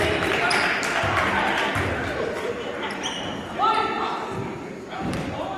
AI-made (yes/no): yes